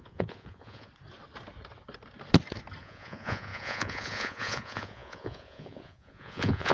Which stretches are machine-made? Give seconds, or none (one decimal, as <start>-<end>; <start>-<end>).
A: 0.0-0.9; 2.8-6.7